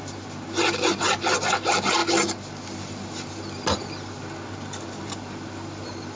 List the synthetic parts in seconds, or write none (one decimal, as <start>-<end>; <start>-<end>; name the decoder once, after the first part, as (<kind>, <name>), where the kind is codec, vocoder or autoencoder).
none